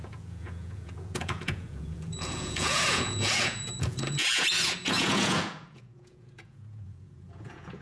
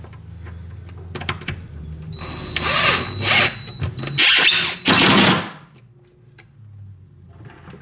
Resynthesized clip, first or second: first